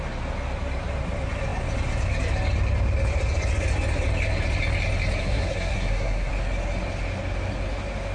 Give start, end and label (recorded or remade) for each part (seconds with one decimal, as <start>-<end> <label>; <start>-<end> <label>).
0.0-5.2 recorded; 5.2-6.3 remade; 6.3-8.1 recorded